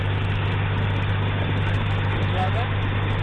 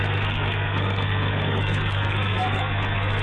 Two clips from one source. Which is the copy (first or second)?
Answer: second